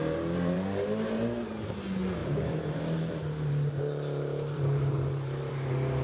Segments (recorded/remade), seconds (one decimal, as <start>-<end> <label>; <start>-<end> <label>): 0.0-1.5 remade; 1.5-2.2 recorded; 2.2-5.5 remade; 5.5-6.0 recorded